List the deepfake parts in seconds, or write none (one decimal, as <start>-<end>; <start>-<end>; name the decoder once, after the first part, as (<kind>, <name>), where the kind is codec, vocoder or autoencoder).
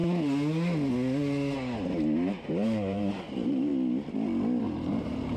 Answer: 2.2-3.7 (vocoder, BigVGAN v2); 4.6-5.4